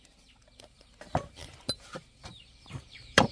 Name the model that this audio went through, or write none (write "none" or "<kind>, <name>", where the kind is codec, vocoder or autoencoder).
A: vocoder, BigVGAN v2